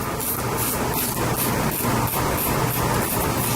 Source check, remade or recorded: recorded